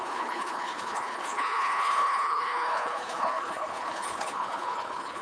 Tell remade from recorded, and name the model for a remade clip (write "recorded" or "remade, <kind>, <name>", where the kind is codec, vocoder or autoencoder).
remade, codec, HILCodec